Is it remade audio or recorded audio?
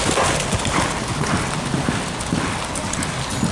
recorded